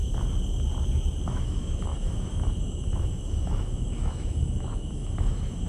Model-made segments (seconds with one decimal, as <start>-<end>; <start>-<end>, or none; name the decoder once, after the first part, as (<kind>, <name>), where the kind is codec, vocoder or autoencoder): 1.3-5.7 (autoencoder, DAC-VAE)